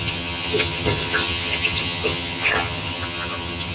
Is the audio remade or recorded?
remade